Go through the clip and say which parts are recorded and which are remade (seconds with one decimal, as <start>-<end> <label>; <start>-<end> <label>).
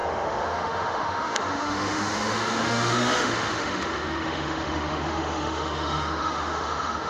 0.0-7.1 remade